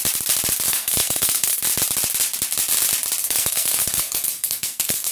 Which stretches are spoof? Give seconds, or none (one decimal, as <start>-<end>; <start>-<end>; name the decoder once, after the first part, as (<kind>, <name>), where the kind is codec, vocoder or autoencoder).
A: 0.7-1.6 (codec, SNAC); 3.2-5.1